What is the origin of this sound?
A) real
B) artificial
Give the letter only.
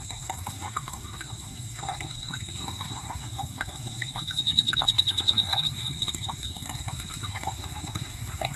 B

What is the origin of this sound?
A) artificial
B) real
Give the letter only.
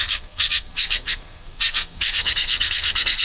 A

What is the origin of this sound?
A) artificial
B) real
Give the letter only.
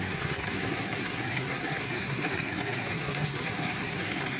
A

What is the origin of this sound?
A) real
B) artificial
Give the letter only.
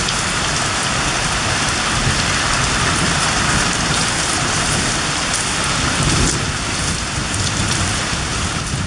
A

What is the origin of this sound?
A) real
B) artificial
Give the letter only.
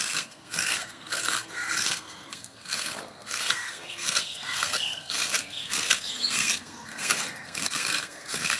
B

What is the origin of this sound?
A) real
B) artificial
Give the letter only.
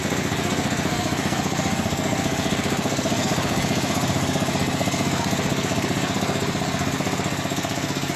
B